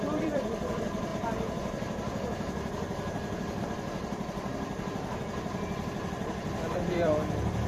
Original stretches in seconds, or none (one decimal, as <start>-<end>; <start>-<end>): 1.1-3.6